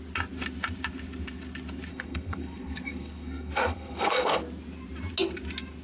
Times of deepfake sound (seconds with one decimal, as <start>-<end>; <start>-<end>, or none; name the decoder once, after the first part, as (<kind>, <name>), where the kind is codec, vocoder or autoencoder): 1.9-4.4 (codec, SNAC)